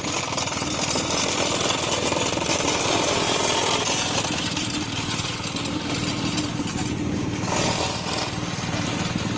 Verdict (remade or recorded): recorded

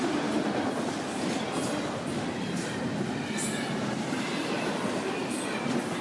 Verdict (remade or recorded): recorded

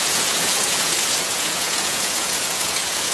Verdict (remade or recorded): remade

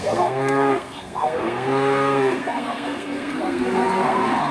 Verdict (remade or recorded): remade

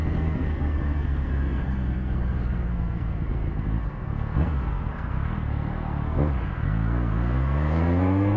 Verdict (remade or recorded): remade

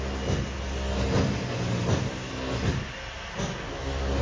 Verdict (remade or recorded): recorded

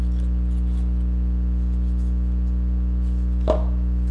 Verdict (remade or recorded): recorded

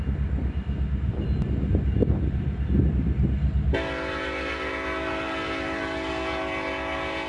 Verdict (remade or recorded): recorded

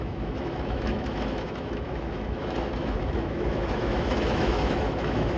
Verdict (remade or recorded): remade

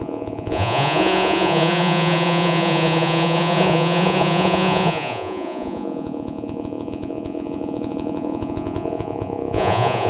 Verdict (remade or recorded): remade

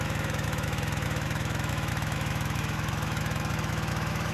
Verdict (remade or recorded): remade